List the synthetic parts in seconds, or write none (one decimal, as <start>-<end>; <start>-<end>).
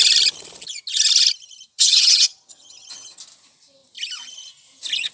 1.7-3.2